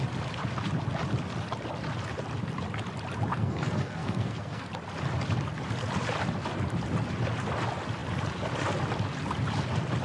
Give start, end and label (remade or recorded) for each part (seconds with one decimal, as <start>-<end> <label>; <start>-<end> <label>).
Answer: 0.0-3.3 recorded; 3.3-4.7 remade; 4.7-10.0 recorded